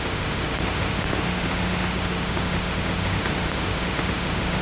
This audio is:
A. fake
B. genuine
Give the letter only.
A